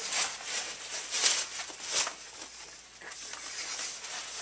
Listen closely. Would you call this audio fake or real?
real